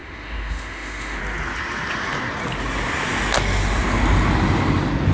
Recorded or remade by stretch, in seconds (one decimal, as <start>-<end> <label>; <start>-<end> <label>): 0.0-1.2 remade; 1.2-5.1 recorded